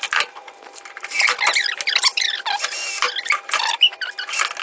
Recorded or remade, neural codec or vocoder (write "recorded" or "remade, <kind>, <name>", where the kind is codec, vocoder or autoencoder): recorded